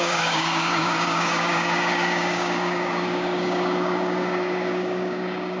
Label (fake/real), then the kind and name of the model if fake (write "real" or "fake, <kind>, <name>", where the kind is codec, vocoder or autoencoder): fake, codec, DAC